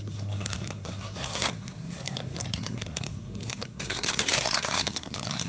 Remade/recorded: remade